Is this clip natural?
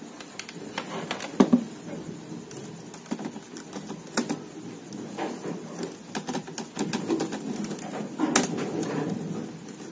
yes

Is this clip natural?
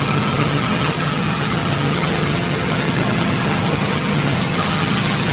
no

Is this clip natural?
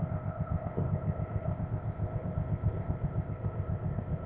no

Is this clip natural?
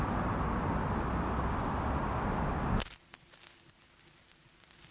yes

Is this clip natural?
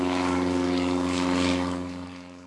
no